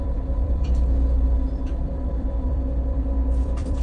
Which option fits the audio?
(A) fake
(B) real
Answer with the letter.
A